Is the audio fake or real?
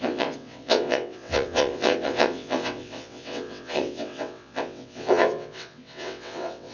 fake